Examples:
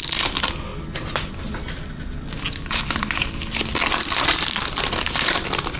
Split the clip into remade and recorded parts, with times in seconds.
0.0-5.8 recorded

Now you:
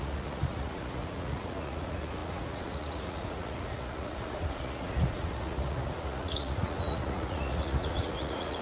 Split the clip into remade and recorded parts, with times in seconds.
0.0-8.6 remade

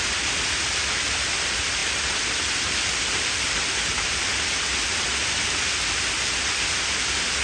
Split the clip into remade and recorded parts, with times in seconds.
0.0-7.4 recorded